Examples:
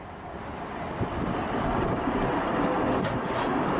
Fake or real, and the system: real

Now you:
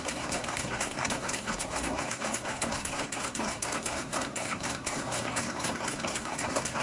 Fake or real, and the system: fake, codec, SNAC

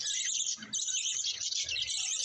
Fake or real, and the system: real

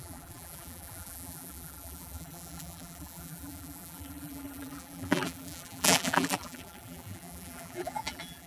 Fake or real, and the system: fake, vocoder, BigVGAN v2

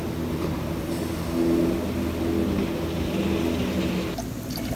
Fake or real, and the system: real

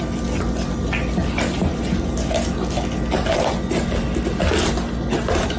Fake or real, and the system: real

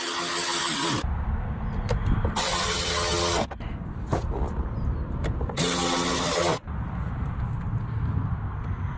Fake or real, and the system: real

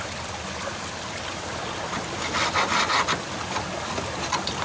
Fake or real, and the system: real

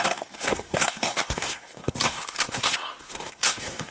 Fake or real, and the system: fake, codec, SNAC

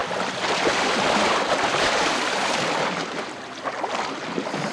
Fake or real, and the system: real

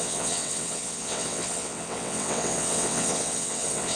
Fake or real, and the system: fake, vocoder, WaveNeXt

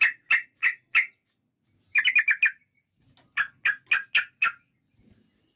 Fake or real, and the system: real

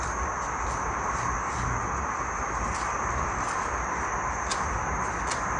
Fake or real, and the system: real